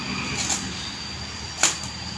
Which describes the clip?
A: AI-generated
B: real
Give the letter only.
B